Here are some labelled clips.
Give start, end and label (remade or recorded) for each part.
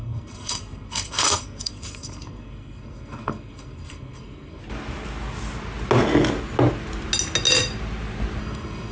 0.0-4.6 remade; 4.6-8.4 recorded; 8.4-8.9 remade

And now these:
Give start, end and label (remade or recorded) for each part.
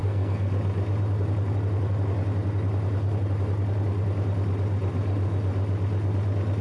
0.0-0.5 remade; 0.5-6.6 recorded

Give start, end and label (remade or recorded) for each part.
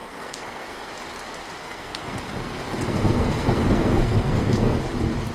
0.0-0.9 remade; 0.9-1.6 recorded; 1.6-4.8 remade; 4.8-5.3 recorded